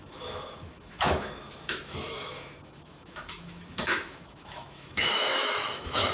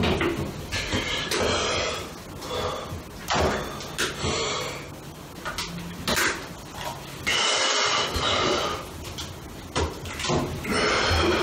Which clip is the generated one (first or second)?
first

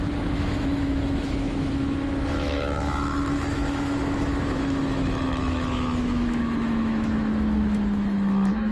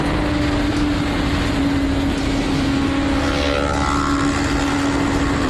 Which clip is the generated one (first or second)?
first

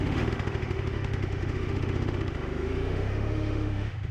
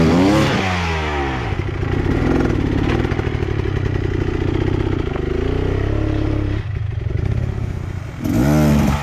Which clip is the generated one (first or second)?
first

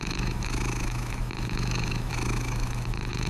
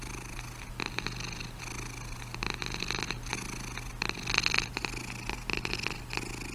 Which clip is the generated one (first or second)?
first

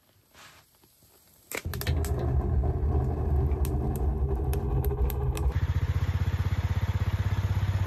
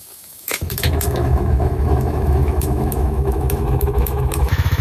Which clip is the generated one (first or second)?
second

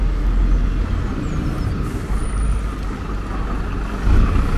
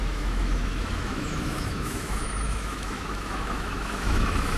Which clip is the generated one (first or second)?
second